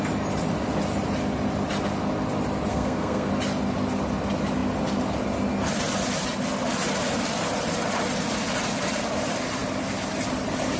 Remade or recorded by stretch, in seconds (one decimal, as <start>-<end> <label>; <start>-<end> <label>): 0.0-2.7 recorded; 2.7-3.3 remade; 3.3-10.8 recorded